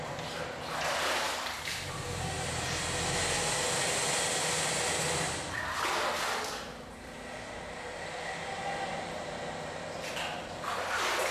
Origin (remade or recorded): recorded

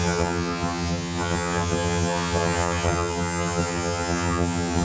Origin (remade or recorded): remade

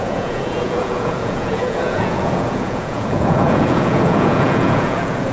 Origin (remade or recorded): remade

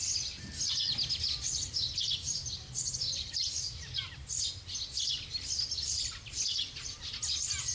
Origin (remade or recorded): recorded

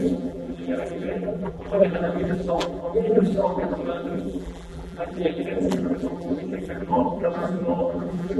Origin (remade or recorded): remade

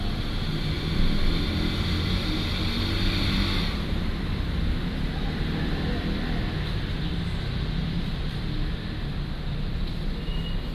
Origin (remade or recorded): recorded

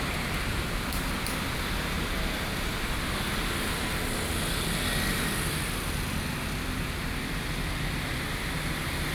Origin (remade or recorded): recorded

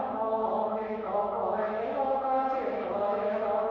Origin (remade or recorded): remade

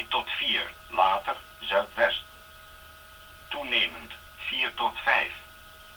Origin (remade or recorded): recorded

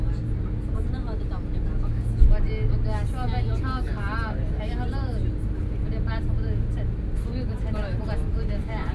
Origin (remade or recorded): recorded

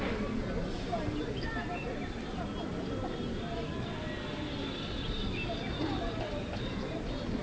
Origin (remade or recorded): recorded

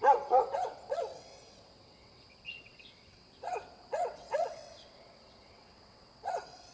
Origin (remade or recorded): remade